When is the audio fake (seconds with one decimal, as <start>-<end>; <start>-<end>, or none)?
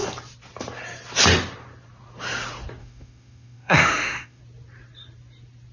2.8-4.4